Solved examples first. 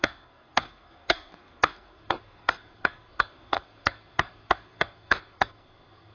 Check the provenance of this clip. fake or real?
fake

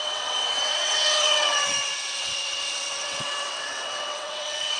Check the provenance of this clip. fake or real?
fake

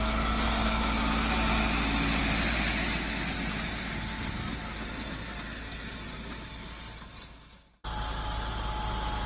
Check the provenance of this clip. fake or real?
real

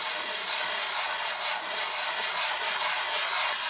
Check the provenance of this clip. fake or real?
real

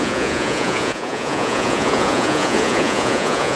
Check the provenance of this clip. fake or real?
fake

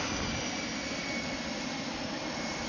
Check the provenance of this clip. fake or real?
real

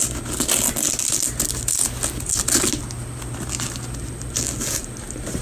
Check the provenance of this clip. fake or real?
real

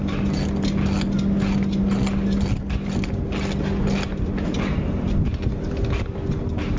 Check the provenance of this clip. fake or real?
real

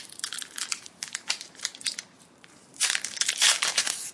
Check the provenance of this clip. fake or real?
fake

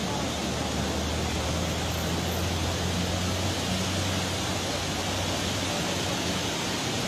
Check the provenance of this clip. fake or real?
real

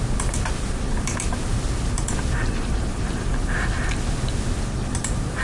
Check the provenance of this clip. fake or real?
real